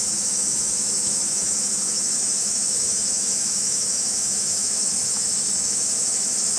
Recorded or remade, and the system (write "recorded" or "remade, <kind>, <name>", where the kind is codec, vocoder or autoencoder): remade, autoencoder, DAC-VAE